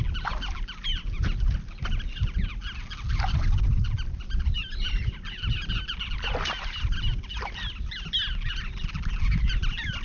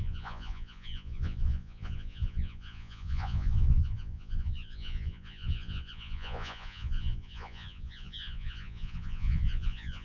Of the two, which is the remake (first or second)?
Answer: second